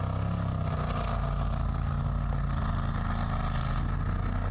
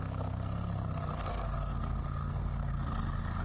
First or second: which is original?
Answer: first